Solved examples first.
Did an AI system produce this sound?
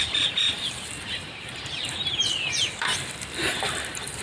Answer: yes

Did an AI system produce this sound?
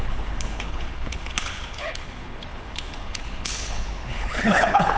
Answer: yes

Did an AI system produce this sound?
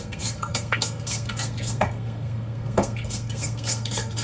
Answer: yes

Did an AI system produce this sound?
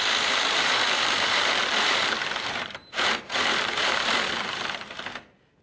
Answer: yes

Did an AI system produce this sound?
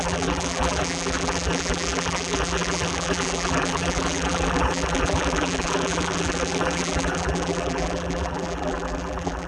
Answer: yes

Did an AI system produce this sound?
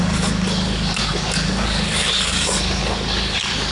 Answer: yes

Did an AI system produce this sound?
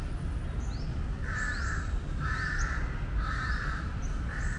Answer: no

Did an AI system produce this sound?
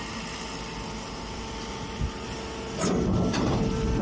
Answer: no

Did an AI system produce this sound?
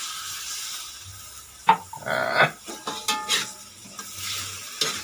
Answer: no